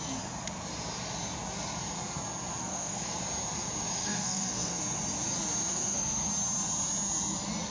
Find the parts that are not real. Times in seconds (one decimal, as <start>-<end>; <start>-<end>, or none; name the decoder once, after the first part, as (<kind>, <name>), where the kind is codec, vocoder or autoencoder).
2.6-3.2 (codec, SNAC); 4.0-4.8; 5.7-6.3